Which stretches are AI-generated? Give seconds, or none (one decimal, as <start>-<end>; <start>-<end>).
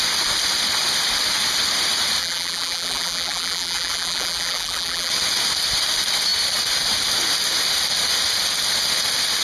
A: 2.2-5.1